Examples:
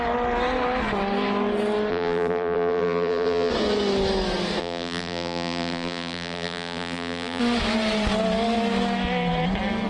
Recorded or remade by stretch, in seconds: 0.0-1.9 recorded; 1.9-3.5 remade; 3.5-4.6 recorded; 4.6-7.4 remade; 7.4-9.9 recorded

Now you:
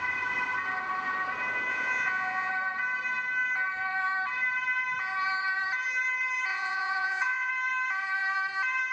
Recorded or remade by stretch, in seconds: 0.0-1.7 recorded; 1.7-2.5 remade; 2.5-6.5 recorded; 6.5-7.5 remade; 7.5-8.9 recorded

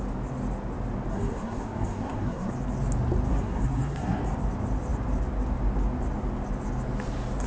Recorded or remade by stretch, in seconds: 0.0-1.1 recorded; 1.1-2.5 remade; 2.5-3.3 recorded; 3.3-4.2 remade; 4.2-7.5 recorded

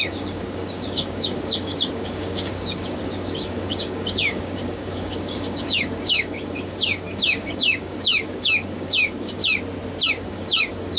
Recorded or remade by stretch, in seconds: 0.0-9.4 remade; 9.4-10.1 recorded; 10.1-11.0 remade

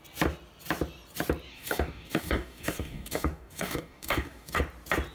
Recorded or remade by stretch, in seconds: 0.0-1.5 recorded; 1.5-4.6 remade; 4.6-5.1 recorded

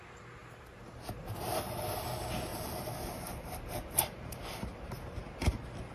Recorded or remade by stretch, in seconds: 0.0-0.4 recorded; 0.4-1.4 remade; 1.4-2.5 recorded; 2.5-5.1 remade; 5.1-5.9 recorded